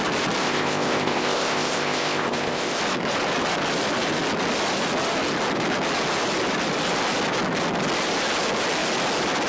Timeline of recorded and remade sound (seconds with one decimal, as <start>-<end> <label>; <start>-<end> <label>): 0.0-0.4 recorded; 0.4-2.8 remade; 2.8-9.5 recorded